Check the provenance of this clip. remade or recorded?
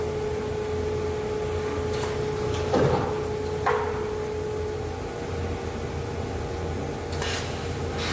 recorded